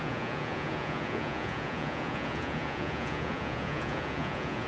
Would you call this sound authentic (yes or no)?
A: no